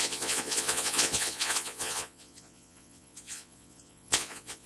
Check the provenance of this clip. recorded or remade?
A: remade